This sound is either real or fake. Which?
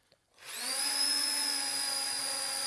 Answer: fake